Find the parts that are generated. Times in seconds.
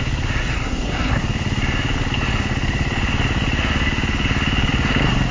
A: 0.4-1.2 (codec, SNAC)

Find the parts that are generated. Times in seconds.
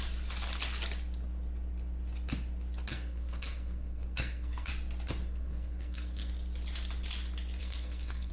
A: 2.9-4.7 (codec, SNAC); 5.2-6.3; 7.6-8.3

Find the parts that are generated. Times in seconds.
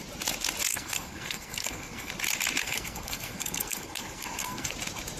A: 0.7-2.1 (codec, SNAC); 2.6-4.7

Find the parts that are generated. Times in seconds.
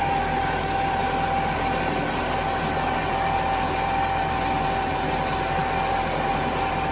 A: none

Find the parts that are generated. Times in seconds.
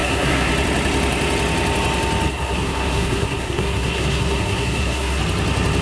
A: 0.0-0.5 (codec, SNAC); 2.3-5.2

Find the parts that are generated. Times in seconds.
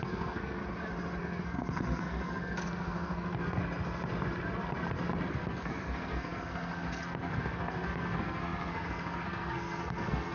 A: 0.0-0.6 (codec, SNAC); 1.2-3.6; 5.3-10.3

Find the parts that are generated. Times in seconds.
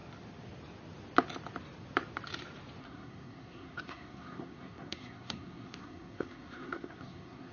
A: 2.8-7.5 (codec, SNAC)